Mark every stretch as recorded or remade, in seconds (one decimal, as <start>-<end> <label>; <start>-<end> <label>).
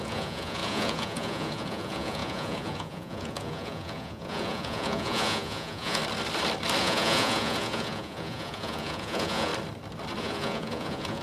0.0-6.0 remade; 6.0-6.8 recorded; 6.8-9.5 remade; 9.5-10.2 recorded; 10.2-11.2 remade